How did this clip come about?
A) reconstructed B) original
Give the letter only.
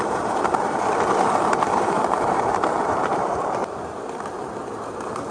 A